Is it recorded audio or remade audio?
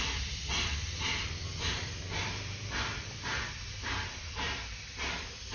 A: remade